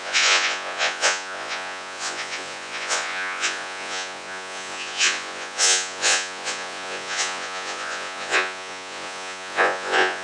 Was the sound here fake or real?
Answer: fake